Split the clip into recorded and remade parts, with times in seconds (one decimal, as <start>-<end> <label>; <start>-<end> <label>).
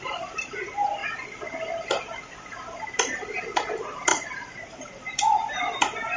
0.0-4.1 recorded; 4.1-5.2 remade; 5.2-6.2 recorded